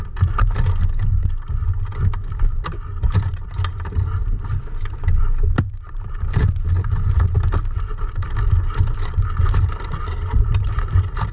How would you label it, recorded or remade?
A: recorded